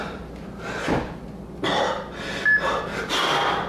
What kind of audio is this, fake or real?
real